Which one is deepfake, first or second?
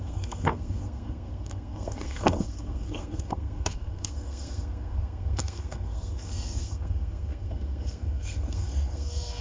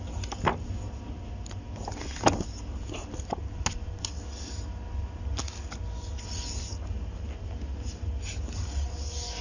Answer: first